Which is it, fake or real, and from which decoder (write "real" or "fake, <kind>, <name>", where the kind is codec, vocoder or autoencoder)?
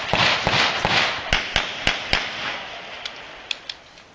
real